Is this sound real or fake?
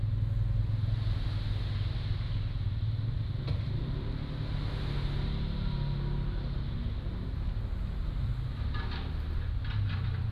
real